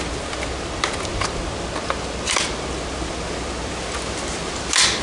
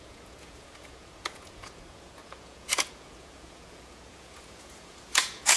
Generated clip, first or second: second